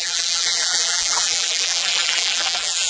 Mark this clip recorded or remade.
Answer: remade